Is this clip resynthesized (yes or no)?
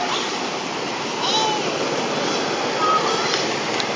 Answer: no